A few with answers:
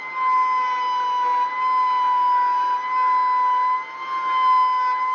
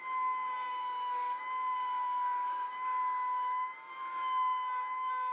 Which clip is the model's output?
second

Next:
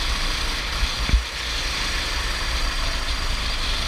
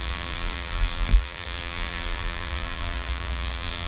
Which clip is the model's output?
second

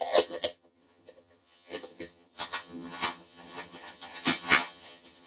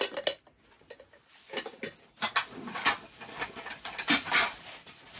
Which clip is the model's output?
first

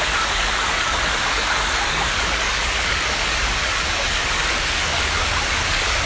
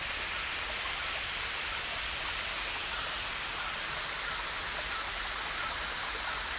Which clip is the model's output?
first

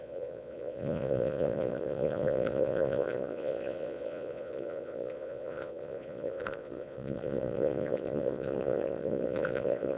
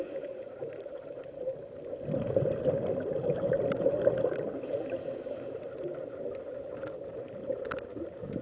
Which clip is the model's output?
first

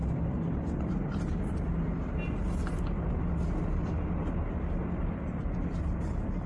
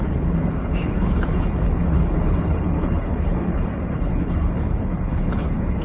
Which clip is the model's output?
second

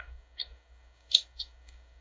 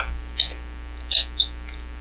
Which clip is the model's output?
first